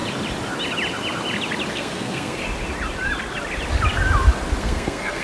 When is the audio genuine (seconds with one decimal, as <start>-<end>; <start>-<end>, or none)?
0.0-1.7; 2.4-4.6